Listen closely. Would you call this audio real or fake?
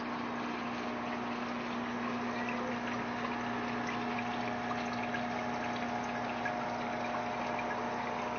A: real